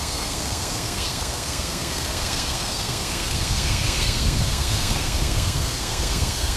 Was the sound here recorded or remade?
remade